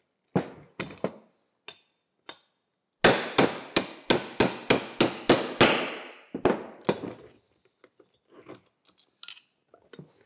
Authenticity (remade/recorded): recorded